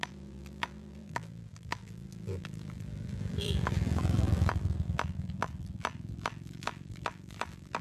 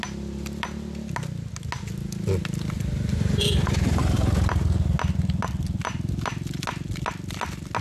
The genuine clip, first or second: second